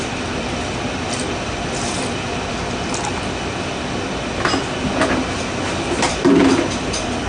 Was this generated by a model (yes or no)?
yes